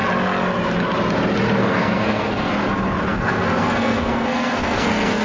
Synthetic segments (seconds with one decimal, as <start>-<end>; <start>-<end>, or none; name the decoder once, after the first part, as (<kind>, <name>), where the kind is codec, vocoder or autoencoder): 1.6-2.5 (codec, SNAC); 3.1-5.2